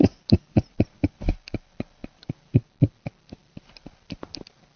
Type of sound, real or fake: real